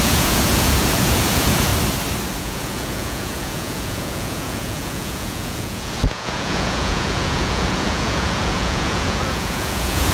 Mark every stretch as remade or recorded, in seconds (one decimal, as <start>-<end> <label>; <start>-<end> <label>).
0.0-1.7 remade; 1.7-2.4 recorded; 2.4-10.1 remade